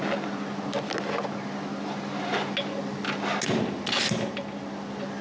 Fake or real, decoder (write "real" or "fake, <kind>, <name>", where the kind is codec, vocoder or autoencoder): real